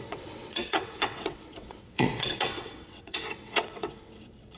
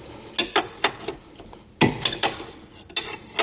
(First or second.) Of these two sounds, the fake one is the first